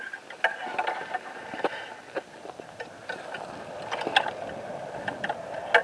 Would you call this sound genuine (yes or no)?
yes